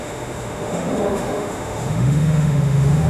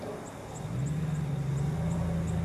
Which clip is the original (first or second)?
second